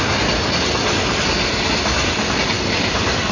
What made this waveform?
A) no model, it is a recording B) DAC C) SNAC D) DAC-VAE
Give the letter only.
A